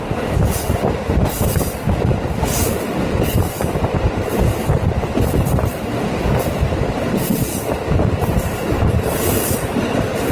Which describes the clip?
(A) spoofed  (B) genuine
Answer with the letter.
A